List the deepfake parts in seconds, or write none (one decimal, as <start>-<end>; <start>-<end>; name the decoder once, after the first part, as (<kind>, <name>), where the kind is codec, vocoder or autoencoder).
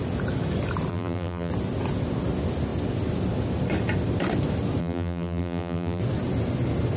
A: 0.9-1.5 (vocoder, BigVGAN v2); 4.8-6.0